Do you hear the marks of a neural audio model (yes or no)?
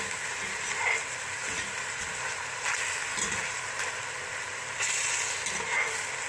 no